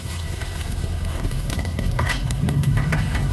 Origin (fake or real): fake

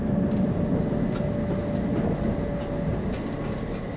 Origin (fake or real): real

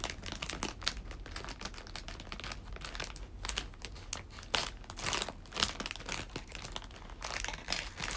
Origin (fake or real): real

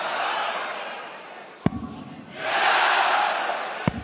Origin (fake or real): fake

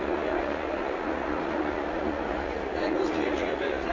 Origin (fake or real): fake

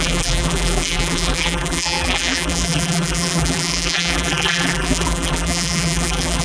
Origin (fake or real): fake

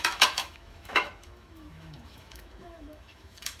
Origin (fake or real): fake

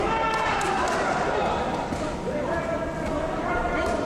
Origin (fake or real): real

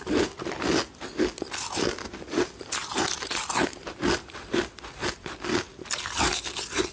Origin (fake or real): real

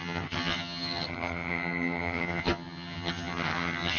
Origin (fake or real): fake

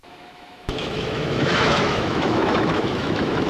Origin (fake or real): fake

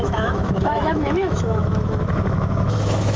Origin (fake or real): fake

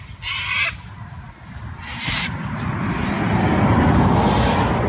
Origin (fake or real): real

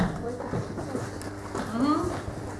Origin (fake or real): real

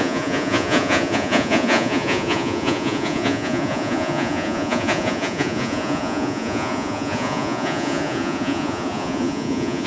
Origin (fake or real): fake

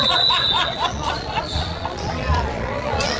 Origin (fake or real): fake